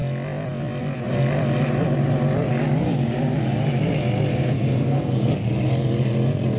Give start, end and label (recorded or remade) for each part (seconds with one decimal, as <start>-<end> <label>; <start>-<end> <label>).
0.0-4.3 recorded; 4.3-5.3 remade; 5.3-6.6 recorded